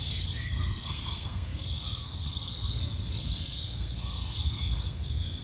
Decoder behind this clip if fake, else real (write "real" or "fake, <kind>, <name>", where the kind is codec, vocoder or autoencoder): fake, codec, SNAC